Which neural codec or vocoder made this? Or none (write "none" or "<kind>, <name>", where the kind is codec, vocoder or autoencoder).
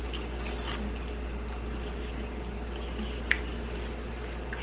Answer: none